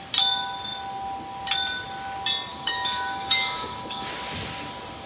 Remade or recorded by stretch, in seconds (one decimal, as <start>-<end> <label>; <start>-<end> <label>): 0.0-2.5 recorded; 2.5-4.1 remade; 4.1-5.1 recorded

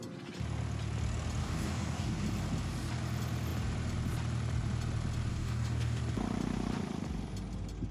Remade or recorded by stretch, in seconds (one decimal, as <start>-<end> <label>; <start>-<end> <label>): 0.0-1.4 recorded; 1.4-2.2 remade; 2.2-5.3 recorded; 5.3-6.0 remade; 6.0-7.9 recorded

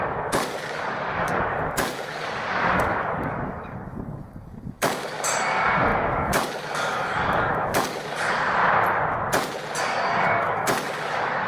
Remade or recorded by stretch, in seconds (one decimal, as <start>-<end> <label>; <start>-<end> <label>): 0.0-8.6 remade; 8.6-9.8 recorded; 9.8-11.5 remade

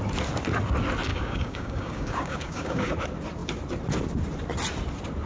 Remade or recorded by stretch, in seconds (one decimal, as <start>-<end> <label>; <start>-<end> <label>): 0.0-1.1 recorded; 1.1-2.9 remade; 2.9-5.3 recorded

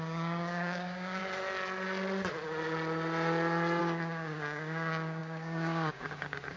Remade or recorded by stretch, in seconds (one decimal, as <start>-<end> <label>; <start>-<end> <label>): 0.0-1.2 remade; 1.2-3.8 recorded; 3.8-6.6 remade

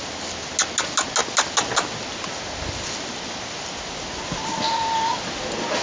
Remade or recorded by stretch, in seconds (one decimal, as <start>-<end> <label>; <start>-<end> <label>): 0.0-5.8 recorded

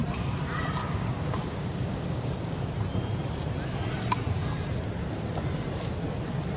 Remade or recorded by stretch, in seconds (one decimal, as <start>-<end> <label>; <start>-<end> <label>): 0.0-0.8 recorded; 0.8-2.7 remade; 2.7-6.6 recorded